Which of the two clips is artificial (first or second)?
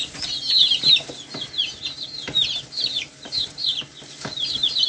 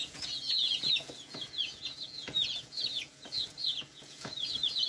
second